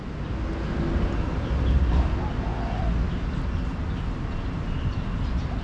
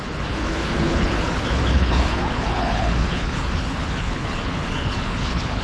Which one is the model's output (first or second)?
second